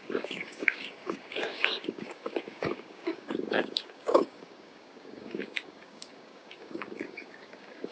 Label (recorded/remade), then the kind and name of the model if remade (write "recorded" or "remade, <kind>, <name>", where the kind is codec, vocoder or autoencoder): remade, codec, DAC